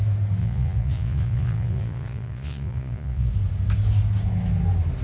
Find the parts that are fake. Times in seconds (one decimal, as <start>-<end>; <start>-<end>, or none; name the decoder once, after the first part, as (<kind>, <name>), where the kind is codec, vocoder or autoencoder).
0.4-3.3 (vocoder, Vocos)